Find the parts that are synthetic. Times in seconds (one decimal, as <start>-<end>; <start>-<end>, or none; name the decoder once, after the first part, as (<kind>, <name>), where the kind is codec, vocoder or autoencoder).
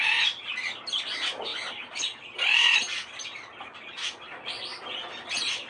none